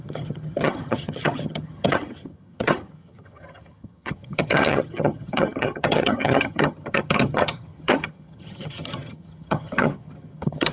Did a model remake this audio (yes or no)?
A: yes